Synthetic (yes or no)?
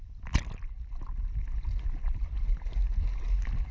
no